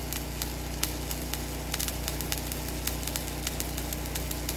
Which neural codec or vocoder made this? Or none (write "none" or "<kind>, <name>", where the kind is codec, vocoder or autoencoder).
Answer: none